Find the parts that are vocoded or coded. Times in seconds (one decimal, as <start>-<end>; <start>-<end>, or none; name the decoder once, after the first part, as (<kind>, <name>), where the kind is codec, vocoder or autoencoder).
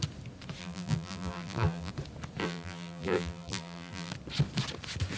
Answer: 0.6-1.9 (vocoder, BigVGAN v2); 2.4-4.1